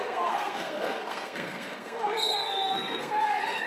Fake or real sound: fake